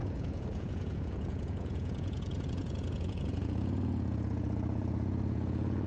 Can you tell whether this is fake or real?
fake